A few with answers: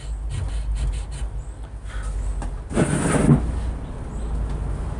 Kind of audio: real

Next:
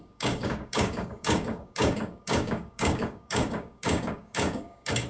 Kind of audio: fake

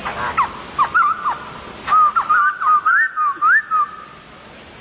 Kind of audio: real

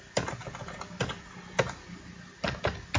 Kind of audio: real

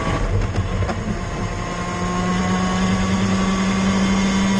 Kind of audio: real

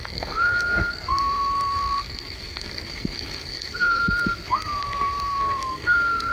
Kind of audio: fake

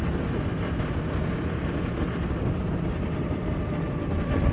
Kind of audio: real